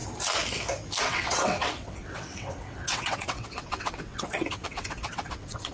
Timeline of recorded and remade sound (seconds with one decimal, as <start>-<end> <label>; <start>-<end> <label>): 0.0-1.0 recorded; 1.0-5.7 remade